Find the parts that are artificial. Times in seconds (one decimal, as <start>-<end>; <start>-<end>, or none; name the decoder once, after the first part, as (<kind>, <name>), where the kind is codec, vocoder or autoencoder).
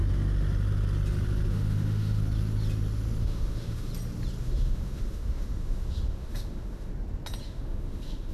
1.5-2.2 (autoencoder, DAC-VAE); 3.2-3.9; 4.4-6.9; 7.4-8.3